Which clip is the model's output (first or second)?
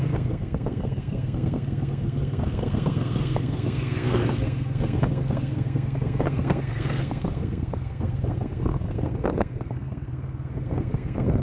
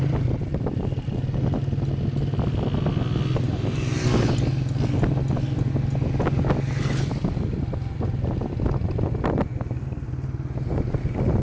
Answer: first